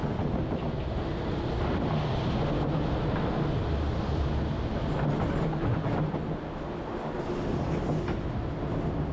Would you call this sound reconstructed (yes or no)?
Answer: no